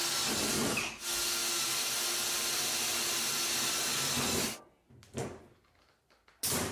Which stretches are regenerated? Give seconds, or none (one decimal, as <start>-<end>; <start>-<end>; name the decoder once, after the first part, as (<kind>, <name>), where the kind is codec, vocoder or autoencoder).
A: none

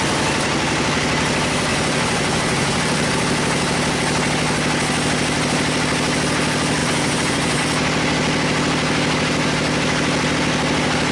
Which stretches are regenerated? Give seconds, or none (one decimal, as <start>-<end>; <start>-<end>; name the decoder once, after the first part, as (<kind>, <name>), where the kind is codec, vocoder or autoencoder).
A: 1.7-3.1 (vocoder, Vocos); 6.8-7.6

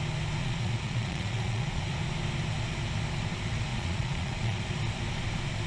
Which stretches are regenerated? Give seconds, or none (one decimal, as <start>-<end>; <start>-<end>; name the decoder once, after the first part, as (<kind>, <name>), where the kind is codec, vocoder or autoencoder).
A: 0.4-1.8 (vocoder, Vocos); 3.7-4.6

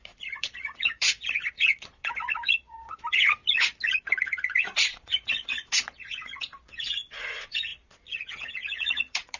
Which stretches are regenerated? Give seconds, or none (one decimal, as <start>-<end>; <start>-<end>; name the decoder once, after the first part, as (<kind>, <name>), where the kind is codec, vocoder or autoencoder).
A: 0.0-3.4 (vocoder, Vocos); 4.2-9.4

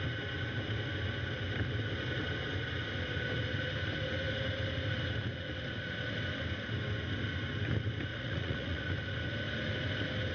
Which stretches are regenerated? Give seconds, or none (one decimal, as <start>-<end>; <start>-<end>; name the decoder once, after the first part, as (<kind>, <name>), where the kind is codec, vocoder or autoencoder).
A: 8.1-8.8 (vocoder, Vocos)

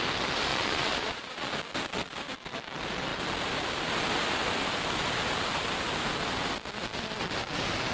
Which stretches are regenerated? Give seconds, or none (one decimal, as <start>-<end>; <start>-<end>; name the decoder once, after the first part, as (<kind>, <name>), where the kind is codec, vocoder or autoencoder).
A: 0.5-1.5 (vocoder, Vocos)